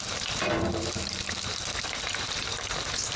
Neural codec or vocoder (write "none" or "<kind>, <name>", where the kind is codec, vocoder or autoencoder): vocoder, BigVGAN v2